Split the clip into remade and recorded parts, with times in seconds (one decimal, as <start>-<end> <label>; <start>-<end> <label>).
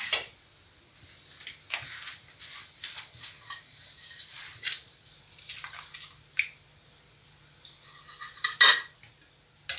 0.0-2.6 recorded; 2.6-5.1 remade; 5.1-9.8 recorded